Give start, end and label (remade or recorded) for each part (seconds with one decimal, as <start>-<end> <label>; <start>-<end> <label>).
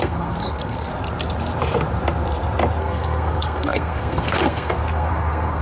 0.0-0.9 remade; 0.9-2.8 recorded; 2.8-5.6 remade